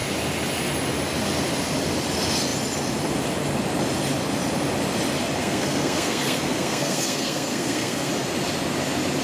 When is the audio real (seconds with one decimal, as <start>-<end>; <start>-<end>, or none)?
0.0-5.4; 8.1-9.2